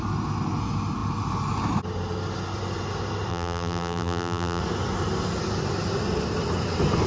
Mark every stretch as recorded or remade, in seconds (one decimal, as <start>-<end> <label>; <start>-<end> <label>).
0.0-3.3 recorded; 3.3-4.6 remade; 4.6-7.1 recorded